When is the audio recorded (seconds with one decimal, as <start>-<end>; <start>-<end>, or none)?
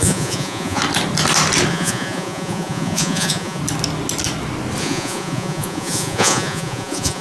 0.8-1.7; 3.6-4.8